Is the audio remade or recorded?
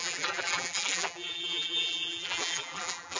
remade